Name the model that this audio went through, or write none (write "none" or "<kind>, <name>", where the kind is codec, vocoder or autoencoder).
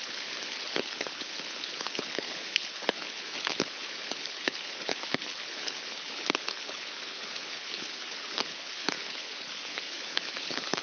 codec, HILCodec